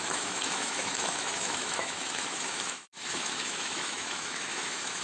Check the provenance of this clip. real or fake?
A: fake